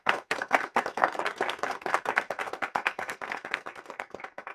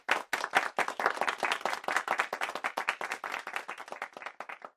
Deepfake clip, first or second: first